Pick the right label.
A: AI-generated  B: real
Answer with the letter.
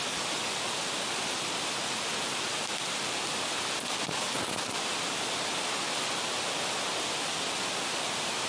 B